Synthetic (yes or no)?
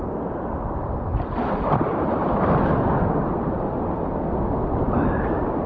no